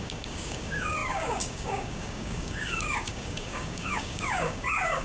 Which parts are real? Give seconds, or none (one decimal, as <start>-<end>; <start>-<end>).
none